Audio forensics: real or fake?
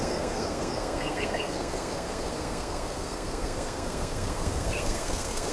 fake